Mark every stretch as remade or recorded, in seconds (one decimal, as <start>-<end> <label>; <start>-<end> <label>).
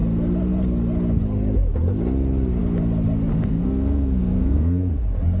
0.0-3.3 recorded; 3.3-4.9 remade; 4.9-5.4 recorded